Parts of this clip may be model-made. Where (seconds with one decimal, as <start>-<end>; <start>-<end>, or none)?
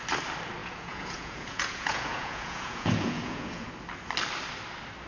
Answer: 0.6-3.7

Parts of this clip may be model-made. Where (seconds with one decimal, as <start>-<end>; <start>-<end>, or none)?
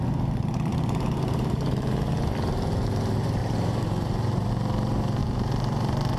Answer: 0.7-1.9; 3.4-4.5; 5.2-6.2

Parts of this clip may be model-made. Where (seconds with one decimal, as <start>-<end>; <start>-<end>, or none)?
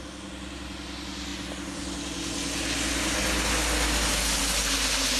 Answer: none